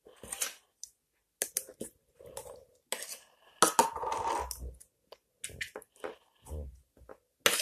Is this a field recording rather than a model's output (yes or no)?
yes